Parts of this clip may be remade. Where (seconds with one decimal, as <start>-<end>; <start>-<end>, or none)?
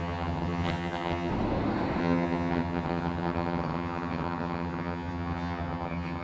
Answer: 0.0-1.3; 2.0-6.2